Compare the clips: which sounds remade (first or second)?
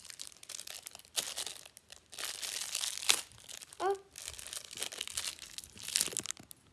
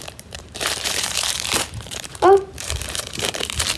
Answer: second